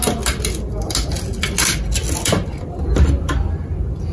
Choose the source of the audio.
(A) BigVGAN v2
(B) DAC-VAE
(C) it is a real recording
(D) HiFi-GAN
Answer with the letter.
C